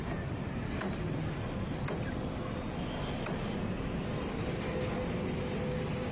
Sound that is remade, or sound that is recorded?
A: recorded